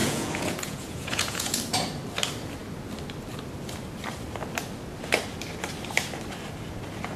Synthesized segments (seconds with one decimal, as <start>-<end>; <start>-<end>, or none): 0.0-1.6